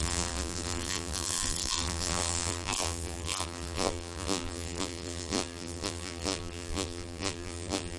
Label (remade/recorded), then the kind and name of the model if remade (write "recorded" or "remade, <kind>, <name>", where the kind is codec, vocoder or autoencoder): remade, vocoder, BigVGAN v2